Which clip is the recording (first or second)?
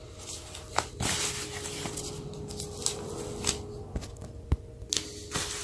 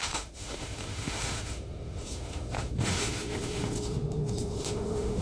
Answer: first